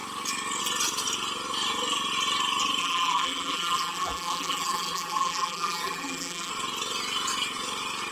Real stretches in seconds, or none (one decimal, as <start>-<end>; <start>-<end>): 0.0-2.8; 6.5-8.1

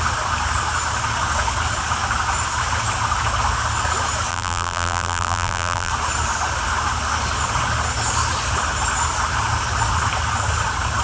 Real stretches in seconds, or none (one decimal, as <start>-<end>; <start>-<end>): 0.0-4.3; 5.9-11.0

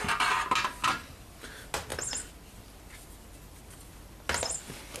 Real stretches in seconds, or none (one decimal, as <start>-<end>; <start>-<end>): 0.0-5.0

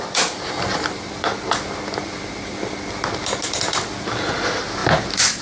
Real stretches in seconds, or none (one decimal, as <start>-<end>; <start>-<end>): 0.0-5.4

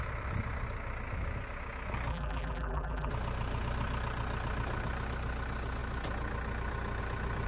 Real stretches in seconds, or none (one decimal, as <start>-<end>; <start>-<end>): 0.0-2.1; 3.1-7.5

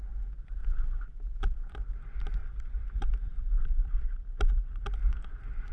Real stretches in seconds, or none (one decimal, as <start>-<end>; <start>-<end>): 0.0-0.6; 1.4-2.4; 5.3-5.7